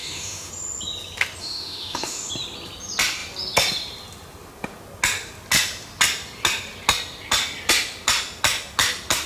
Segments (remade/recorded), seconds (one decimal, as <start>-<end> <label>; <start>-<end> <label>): 0.0-0.5 remade; 0.5-1.4 recorded; 1.4-2.3 remade; 2.3-9.3 recorded